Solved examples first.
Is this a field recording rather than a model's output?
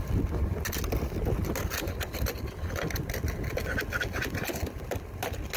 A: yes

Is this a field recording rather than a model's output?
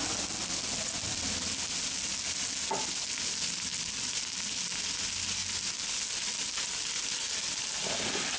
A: yes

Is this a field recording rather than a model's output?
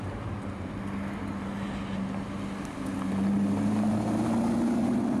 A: yes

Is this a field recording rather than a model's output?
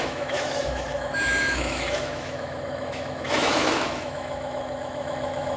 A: no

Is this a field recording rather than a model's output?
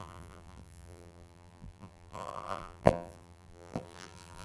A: no